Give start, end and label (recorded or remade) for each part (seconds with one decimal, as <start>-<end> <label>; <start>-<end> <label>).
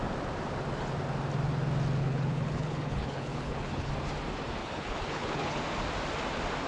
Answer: 0.0-2.0 recorded; 2.0-3.9 remade; 3.9-4.6 recorded; 4.6-5.6 remade; 5.6-6.7 recorded